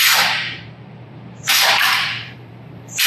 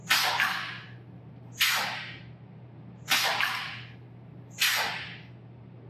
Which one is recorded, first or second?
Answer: second